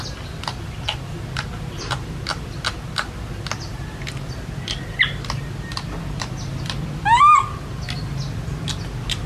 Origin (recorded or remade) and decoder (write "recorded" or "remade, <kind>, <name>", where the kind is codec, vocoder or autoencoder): recorded